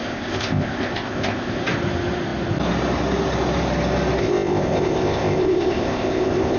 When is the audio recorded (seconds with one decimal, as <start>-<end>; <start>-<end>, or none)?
1.6-4.2

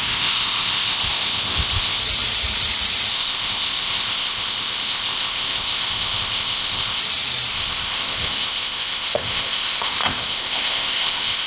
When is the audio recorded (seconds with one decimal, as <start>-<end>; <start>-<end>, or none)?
2.0-3.1; 7.0-7.5

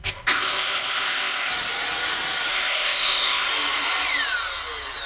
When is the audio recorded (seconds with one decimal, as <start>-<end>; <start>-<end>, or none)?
1.5-2.5; 3.5-5.1

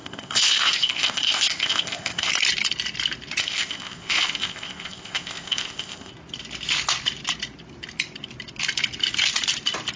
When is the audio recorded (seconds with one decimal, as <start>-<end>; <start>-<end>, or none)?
2.3-3.4; 6.1-10.0

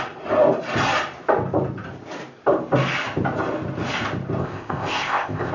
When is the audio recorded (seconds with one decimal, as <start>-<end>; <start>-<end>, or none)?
0.0-4.4